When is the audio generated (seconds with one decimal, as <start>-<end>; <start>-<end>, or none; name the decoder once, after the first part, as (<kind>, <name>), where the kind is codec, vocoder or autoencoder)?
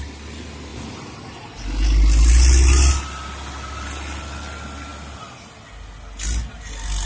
0.7-1.6 (vocoder, BigVGAN v2)